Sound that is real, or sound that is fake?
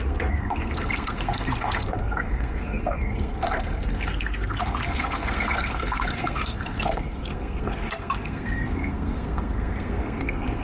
fake